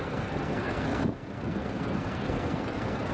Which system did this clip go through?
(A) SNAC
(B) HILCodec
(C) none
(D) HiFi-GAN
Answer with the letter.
A